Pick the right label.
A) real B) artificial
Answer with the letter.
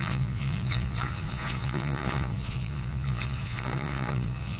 B